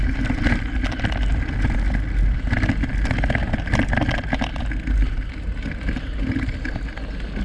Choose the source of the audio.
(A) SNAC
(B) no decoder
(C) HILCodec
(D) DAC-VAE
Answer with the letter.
B